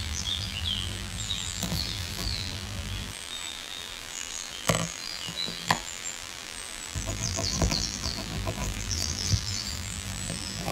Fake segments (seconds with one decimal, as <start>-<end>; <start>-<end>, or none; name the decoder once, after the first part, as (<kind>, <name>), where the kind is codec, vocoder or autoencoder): 0.0-10.7 (vocoder, BigVGAN v2)